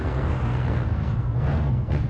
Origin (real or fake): fake